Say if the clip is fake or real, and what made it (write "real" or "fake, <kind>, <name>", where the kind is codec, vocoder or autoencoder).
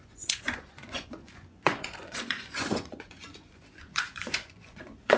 fake, vocoder, Vocos